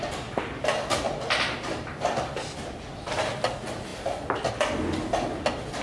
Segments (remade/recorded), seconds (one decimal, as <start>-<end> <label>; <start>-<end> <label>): 0.0-5.8 recorded